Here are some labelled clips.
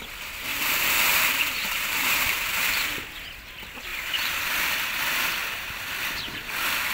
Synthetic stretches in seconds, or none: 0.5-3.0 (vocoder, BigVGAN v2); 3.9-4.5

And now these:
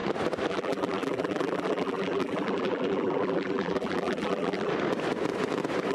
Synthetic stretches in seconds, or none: 0.5-4.7 (vocoder, BigVGAN v2)